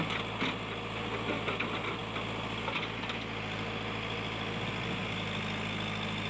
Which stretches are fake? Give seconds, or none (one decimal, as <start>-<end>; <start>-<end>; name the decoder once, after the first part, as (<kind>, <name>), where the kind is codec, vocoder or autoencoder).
none